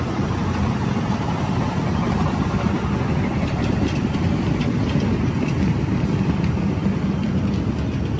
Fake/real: real